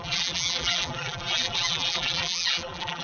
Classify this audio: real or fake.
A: fake